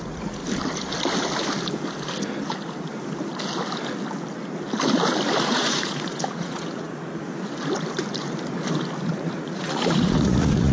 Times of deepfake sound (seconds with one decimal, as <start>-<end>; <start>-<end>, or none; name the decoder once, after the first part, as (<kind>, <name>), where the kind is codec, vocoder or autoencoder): 0.0-0.4 (vocoder, Vocos); 5.4-7.3; 9.1-10.7